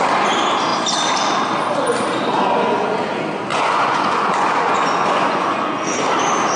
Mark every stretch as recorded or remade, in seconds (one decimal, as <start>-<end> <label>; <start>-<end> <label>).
0.0-3.5 recorded; 3.5-6.0 remade; 6.0-6.6 recorded